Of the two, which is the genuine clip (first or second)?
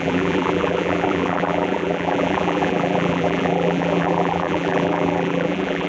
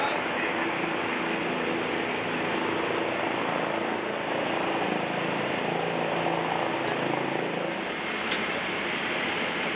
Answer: second